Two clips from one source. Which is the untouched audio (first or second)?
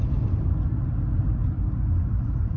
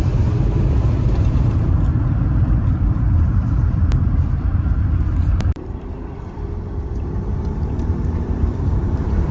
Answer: first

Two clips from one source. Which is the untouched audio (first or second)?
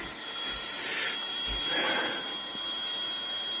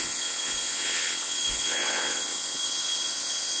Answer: first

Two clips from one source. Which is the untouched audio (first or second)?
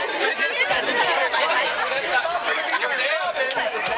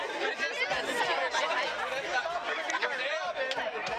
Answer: second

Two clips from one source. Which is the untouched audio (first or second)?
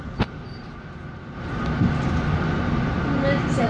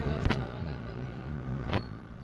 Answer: first